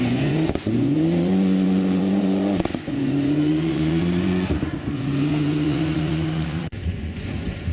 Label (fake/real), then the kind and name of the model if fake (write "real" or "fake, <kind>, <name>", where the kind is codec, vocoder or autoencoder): fake, vocoder, Vocos